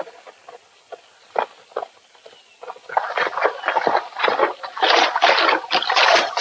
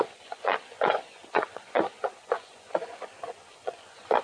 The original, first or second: first